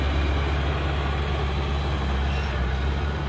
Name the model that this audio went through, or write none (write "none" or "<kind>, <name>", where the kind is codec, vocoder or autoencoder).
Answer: none